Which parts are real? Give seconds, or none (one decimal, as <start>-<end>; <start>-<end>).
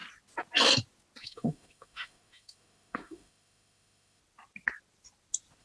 0.0-1.2; 4.2-5.6